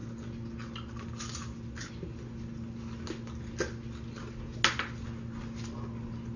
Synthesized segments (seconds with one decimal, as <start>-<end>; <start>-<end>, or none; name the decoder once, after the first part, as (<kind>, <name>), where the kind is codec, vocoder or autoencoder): none